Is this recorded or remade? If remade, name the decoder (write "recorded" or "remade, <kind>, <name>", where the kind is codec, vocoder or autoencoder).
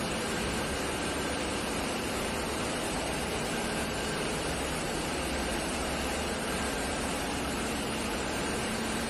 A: remade, vocoder, BigVGAN v2